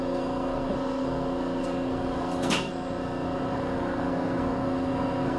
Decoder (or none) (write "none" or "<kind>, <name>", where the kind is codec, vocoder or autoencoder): codec, SNAC